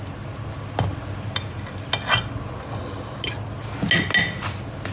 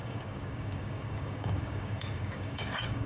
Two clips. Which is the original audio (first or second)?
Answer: first